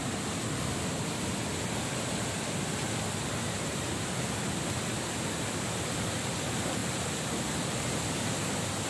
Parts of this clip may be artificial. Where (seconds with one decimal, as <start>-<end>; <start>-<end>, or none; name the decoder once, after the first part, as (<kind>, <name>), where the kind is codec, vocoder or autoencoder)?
none